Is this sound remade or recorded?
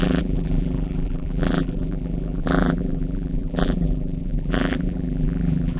remade